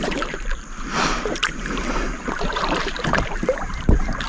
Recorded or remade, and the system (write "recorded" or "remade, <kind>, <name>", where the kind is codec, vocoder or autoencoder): remade, vocoder, BigVGAN v2